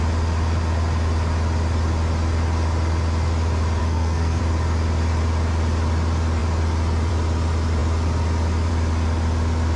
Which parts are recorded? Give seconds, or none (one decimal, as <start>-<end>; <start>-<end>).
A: 0.0-3.8; 4.4-9.8